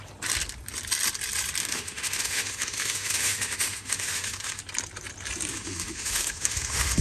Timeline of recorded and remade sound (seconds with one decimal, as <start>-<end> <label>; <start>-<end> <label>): 0.0-1.6 recorded; 1.6-4.6 remade; 4.6-5.5 recorded; 5.5-7.0 remade